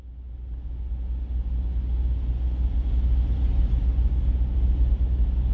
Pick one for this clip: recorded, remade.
recorded